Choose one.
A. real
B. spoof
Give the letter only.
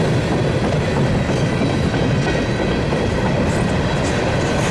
A